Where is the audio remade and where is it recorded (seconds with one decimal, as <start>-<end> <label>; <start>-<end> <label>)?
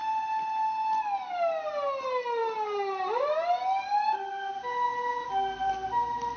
0.0-6.4 recorded